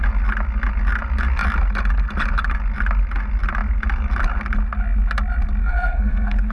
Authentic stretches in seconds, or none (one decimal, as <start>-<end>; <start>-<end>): 0.0-5.6